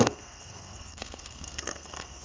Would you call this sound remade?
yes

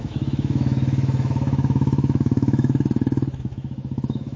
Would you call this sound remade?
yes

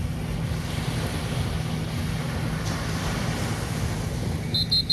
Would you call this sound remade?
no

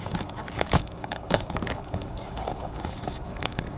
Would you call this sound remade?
yes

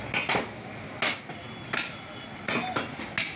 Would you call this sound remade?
no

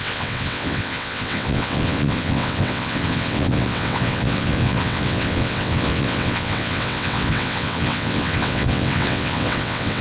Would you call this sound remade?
yes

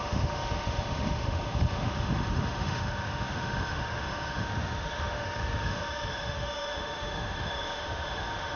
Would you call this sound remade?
yes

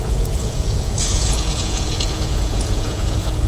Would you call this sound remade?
yes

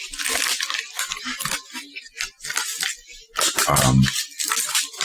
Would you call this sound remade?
no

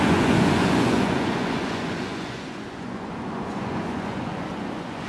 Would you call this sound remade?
yes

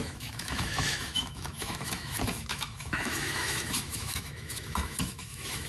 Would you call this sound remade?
yes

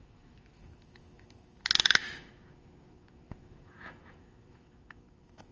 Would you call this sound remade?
yes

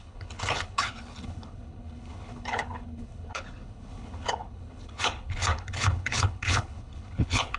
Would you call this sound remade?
yes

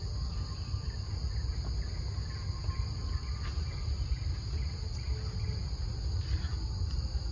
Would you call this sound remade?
no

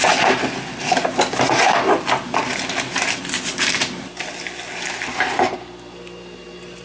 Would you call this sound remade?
no